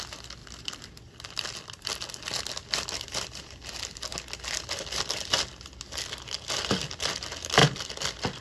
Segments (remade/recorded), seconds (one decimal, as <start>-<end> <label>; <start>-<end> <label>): 0.0-0.4 recorded; 0.4-1.0 remade; 1.0-8.4 recorded